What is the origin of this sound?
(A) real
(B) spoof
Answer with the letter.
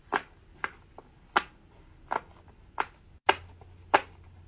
A